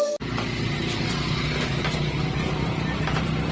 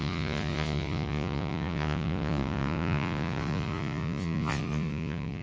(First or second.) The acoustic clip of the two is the first